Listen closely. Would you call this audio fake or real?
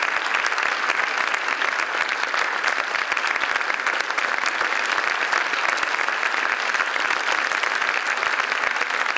real